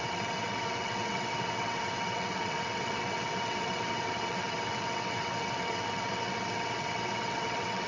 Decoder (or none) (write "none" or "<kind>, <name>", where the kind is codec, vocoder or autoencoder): vocoder, WaveNeXt